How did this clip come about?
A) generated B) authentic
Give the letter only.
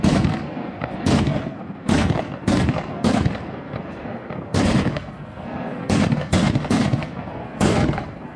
A